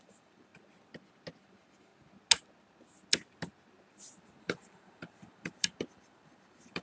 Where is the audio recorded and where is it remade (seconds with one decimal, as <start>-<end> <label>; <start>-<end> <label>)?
0.0-0.5 remade; 0.5-1.4 recorded; 1.4-1.9 remade; 1.9-4.4 recorded; 4.4-6.8 remade